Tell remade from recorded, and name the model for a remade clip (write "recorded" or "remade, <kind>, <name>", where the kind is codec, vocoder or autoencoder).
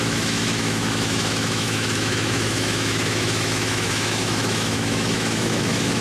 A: remade, autoencoder, DAC-VAE